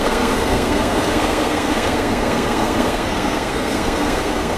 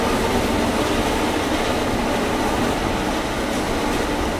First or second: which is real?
second